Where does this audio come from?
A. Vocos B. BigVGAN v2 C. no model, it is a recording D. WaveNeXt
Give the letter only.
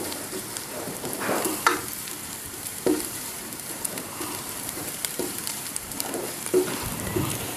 B